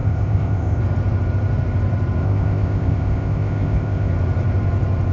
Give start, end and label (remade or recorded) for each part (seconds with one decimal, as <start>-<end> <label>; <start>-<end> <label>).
0.0-0.8 remade; 0.8-2.2 recorded; 2.2-4.1 remade; 4.1-5.1 recorded